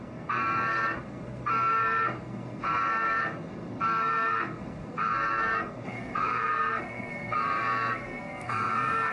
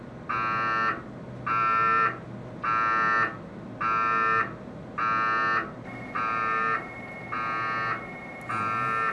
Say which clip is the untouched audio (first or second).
second